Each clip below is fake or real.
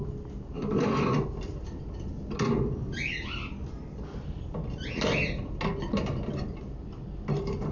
real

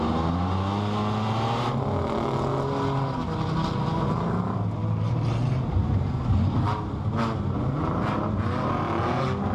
real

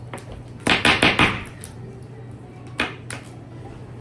real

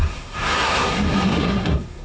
fake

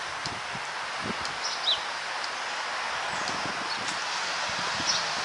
real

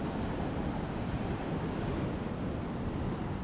real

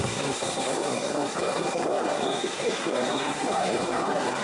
fake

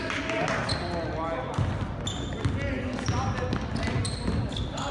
real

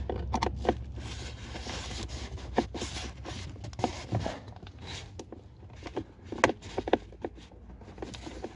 real